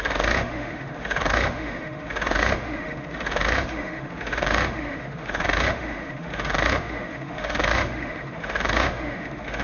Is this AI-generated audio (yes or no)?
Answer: yes